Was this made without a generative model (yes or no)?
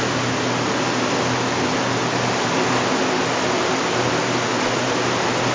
yes